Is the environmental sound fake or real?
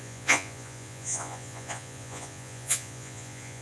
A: fake